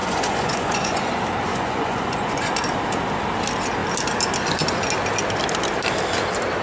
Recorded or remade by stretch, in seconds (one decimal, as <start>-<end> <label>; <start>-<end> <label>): 0.0-1.1 remade; 1.1-1.5 recorded; 1.5-2.5 remade; 2.5-6.6 recorded